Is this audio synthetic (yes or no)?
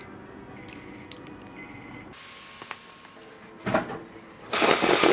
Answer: no